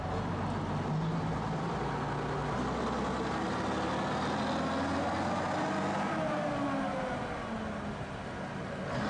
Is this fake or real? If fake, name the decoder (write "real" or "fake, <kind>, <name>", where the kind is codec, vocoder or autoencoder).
real